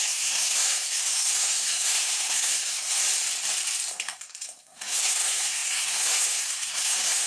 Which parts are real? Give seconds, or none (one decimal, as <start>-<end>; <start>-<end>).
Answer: 3.0-3.9